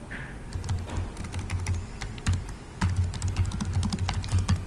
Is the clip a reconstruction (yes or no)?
no